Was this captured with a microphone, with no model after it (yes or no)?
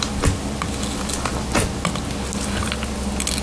yes